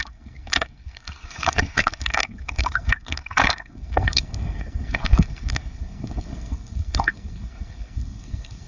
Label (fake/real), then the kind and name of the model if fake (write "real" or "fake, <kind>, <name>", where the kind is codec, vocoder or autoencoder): fake, codec, SNAC